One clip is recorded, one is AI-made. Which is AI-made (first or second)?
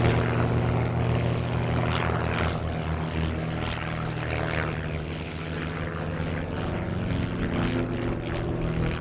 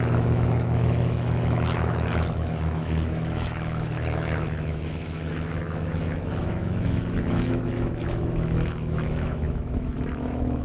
second